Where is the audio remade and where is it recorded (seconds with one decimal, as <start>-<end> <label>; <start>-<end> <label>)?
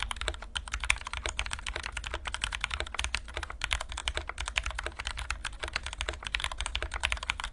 0.0-7.5 recorded